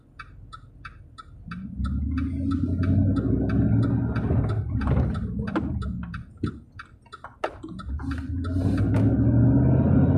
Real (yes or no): yes